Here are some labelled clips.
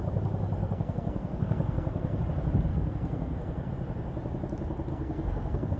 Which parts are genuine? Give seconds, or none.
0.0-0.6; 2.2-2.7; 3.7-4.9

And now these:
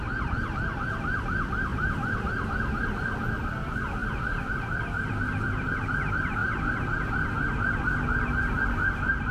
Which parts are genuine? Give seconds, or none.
1.7-2.8; 6.4-8.5